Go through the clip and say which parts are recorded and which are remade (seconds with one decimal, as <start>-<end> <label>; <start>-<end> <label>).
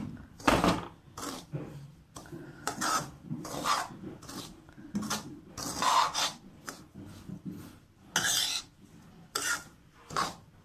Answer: 0.0-10.6 recorded